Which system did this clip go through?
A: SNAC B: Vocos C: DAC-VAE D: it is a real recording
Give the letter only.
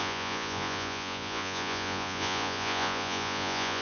B